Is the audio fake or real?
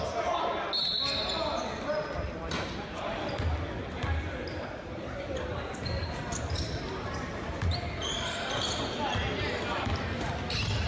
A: real